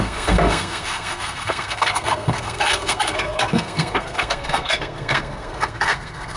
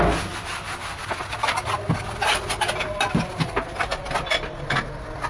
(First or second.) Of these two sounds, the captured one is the second